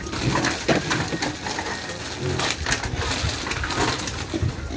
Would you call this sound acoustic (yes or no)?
yes